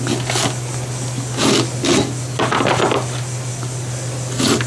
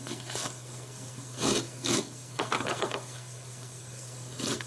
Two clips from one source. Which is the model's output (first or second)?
second